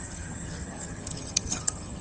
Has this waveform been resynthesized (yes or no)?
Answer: yes